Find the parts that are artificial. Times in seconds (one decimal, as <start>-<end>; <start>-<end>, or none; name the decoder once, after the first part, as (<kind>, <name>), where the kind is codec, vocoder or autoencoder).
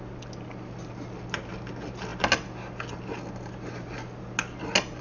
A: none